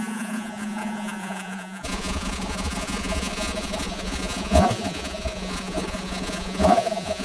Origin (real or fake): fake